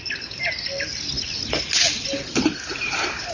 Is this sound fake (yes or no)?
no